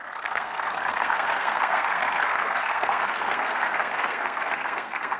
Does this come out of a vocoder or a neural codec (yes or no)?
yes